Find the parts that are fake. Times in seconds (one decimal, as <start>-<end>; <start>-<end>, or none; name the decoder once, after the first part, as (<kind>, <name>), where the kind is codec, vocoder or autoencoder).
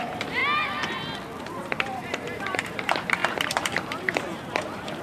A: 0.0-0.4 (vocoder, BigVGAN v2); 1.4-5.0